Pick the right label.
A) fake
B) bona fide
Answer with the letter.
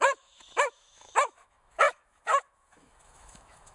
A